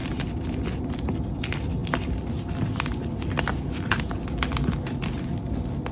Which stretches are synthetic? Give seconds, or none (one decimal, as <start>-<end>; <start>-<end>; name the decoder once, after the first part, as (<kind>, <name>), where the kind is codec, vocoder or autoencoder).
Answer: 0.0-0.8 (vocoder, BigVGAN v2)